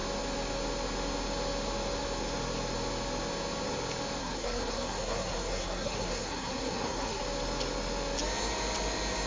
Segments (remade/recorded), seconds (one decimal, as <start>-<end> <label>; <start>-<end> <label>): 0.0-4.2 recorded; 4.2-7.2 remade; 7.2-9.3 recorded

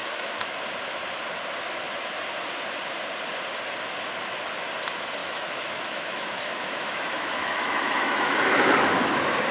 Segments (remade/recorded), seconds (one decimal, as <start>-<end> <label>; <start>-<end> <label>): 0.0-0.6 remade; 0.6-5.2 recorded; 5.2-8.4 remade; 8.4-9.5 recorded

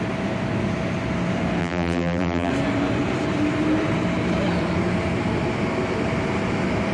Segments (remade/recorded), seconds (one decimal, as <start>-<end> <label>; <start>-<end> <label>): 0.0-1.6 recorded; 1.6-2.5 remade; 2.5-6.9 recorded

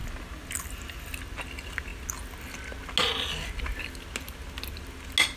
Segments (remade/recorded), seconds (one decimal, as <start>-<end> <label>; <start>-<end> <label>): 0.0-5.4 recorded

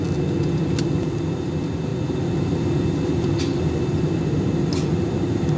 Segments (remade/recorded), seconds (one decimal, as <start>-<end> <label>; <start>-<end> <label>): 0.0-5.6 recorded

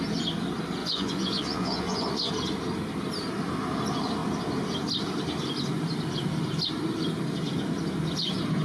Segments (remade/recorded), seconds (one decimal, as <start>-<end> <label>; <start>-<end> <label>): 0.0-0.8 recorded; 0.8-2.3 remade; 2.3-8.6 recorded